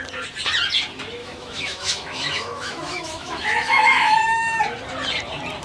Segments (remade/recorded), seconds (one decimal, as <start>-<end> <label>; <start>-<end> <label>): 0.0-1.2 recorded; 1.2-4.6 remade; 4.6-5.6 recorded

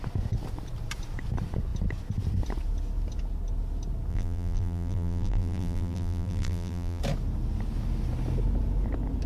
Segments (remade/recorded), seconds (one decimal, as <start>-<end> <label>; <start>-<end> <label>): 0.0-4.1 recorded; 4.1-7.0 remade; 7.0-9.3 recorded

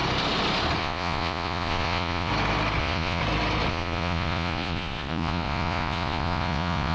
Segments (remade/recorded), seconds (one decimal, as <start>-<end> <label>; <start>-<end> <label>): 0.0-0.8 recorded; 0.8-2.3 remade; 2.3-2.8 recorded; 2.8-3.2 remade; 3.2-3.7 recorded; 3.7-6.9 remade

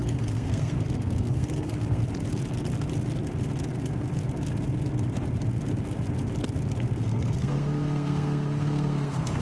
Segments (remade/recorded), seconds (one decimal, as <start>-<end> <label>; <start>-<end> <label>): 0.0-2.0 remade; 2.0-7.0 recorded; 7.0-9.4 remade